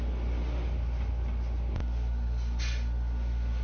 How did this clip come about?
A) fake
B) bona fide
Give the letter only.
B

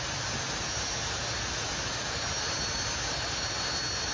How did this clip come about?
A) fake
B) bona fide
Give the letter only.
B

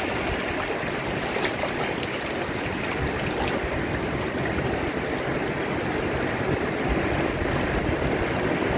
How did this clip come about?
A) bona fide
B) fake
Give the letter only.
A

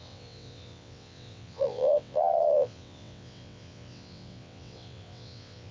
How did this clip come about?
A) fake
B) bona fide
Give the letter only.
A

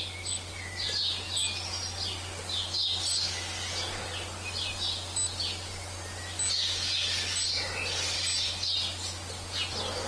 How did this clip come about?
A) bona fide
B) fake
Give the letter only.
A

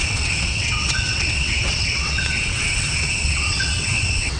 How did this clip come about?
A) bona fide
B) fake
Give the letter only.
B